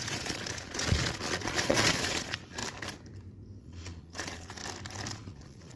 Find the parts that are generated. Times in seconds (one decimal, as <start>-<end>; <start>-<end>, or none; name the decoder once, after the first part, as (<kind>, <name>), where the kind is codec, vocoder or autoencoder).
0.0-2.6 (vocoder, Vocos); 3.6-4.6; 5.1-5.8